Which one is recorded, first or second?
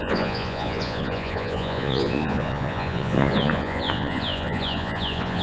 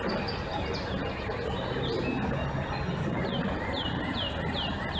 second